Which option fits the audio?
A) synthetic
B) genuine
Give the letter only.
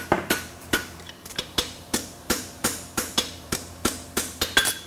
A